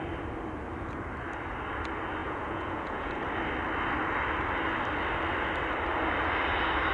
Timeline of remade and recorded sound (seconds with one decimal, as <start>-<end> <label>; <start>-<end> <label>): 0.0-2.2 recorded; 2.2-3.1 remade; 3.1-6.9 recorded